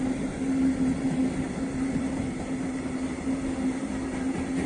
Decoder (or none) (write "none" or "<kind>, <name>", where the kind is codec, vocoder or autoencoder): none